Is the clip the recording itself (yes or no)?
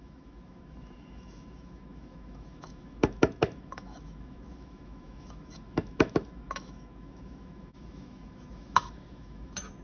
no